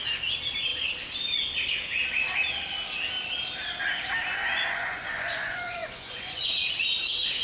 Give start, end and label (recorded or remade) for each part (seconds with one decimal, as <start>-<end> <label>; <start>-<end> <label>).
0.0-4.3 recorded; 4.3-6.4 remade; 6.4-7.4 recorded

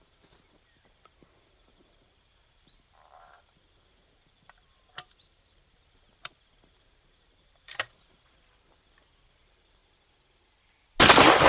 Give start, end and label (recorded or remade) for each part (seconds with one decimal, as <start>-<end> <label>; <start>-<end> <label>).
0.0-9.8 remade; 9.8-11.5 recorded

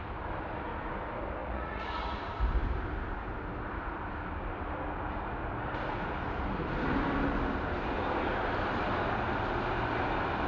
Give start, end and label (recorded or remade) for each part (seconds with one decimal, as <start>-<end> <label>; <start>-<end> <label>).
0.0-1.4 recorded; 1.4-2.2 remade; 2.2-10.5 recorded

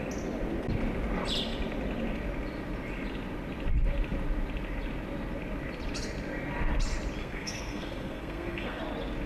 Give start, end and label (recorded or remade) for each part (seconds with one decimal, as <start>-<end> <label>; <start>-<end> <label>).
0.0-7.2 recorded; 7.2-8.8 remade; 8.8-9.3 recorded

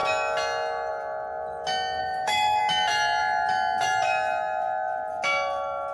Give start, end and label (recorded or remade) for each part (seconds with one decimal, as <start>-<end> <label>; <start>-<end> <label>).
0.0-2.0 recorded; 2.0-2.6 remade; 2.6-5.9 recorded